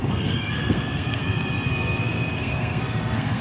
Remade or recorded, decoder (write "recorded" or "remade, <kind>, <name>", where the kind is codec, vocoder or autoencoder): remade, codec, SNAC